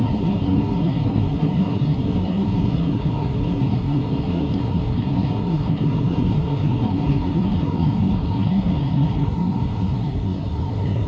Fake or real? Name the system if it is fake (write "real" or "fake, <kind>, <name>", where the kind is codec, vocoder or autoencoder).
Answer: fake, codec, SNAC